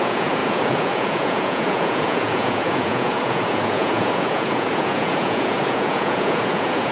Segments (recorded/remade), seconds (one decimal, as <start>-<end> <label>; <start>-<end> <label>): 0.0-6.9 remade